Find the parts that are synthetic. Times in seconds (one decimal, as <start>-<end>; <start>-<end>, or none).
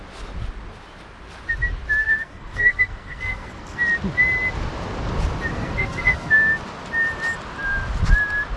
2.0-3.8; 5.5-6.3